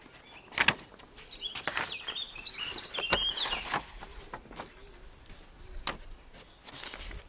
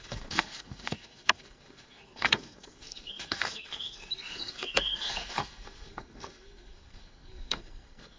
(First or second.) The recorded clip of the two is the first